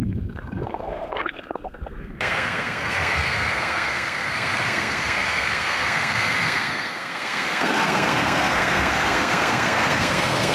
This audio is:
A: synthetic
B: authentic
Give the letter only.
A